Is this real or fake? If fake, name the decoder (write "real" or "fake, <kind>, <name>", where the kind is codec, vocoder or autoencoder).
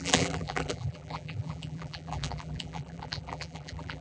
fake, vocoder, BigVGAN v2